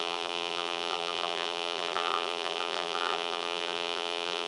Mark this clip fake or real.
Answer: fake